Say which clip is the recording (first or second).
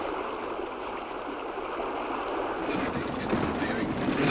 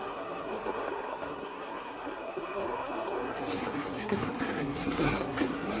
first